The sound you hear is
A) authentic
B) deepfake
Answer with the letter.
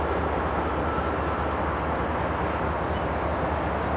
A